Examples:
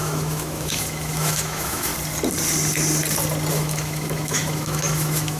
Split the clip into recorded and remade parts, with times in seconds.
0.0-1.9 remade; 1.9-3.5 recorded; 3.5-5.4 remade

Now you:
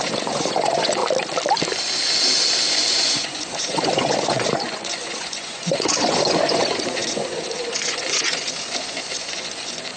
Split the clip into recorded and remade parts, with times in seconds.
0.0-1.0 remade; 1.0-2.7 recorded; 2.7-10.0 remade